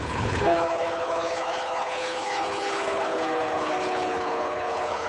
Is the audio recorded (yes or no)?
no